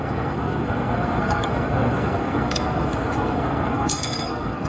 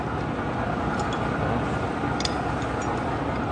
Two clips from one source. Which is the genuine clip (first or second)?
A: second